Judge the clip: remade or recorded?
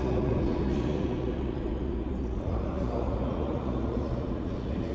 remade